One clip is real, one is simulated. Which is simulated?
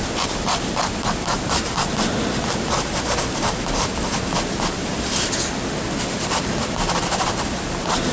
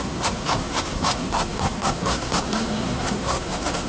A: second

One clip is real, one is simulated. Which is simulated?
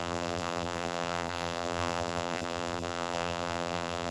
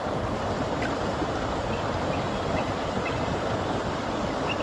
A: first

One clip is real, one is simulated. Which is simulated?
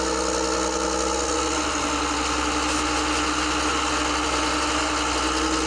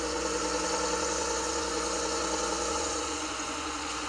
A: second